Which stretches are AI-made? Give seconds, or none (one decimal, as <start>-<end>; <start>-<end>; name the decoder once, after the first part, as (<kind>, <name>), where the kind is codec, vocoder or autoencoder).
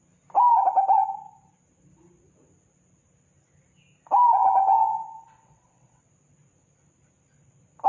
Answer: 4.4-6.0 (vocoder, WaveNeXt)